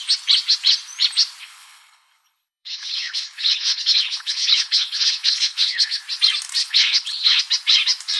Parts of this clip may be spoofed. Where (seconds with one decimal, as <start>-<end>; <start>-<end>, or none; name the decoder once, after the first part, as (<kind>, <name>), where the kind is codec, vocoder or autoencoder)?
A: 1.4-6.0 (codec, HILCodec); 6.6-7.4